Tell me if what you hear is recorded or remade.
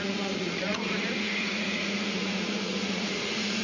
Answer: remade